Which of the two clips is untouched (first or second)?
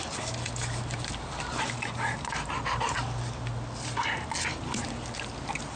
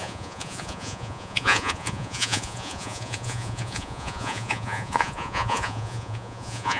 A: first